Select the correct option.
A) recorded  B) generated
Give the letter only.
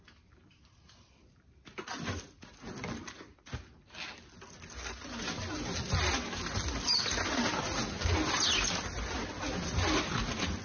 A